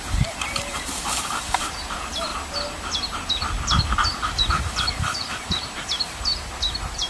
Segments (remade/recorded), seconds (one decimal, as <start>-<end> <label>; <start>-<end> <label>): 0.0-2.3 remade; 2.3-4.1 recorded; 4.1-7.1 remade